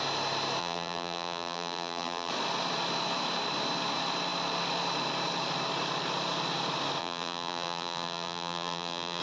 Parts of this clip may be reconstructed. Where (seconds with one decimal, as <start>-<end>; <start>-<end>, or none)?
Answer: 0.6-2.3; 7.0-9.2